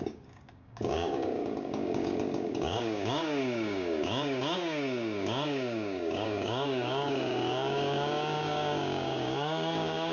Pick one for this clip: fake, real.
fake